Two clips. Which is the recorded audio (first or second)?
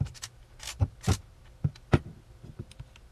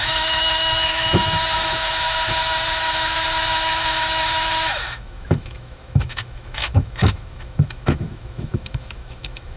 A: first